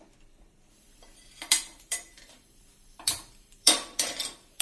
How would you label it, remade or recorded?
remade